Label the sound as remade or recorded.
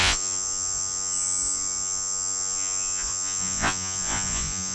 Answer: remade